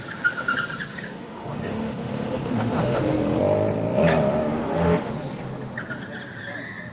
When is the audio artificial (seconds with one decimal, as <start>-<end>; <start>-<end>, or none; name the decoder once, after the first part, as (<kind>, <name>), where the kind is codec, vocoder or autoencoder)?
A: 0.9-3.4 (autoencoder, DAC-VAE); 4.5-5.1